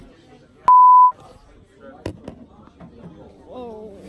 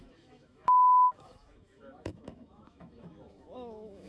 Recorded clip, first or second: first